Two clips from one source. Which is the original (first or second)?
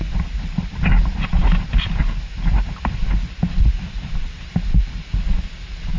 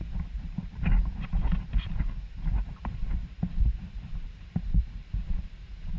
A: first